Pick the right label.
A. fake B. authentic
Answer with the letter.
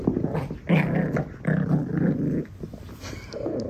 B